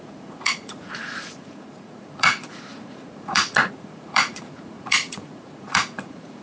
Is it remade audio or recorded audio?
remade